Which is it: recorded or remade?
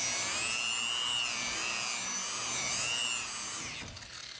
recorded